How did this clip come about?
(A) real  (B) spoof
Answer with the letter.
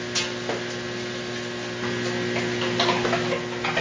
A